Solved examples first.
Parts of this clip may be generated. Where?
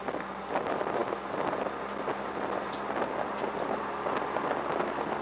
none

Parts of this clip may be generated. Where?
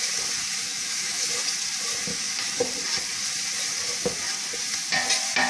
0.6-1.3 (autoencoder, DAC-VAE); 2.1-2.6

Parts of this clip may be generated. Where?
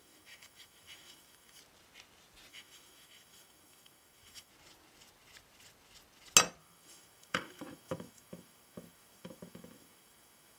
0.0-1.6 (autoencoder, DAC-VAE); 2.5-4.5; 6.6-10.6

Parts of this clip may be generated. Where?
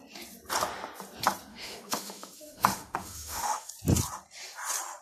1.5-3.7 (autoencoder, DAC-VAE)